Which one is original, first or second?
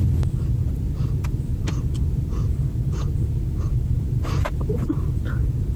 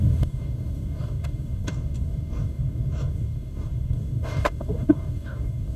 first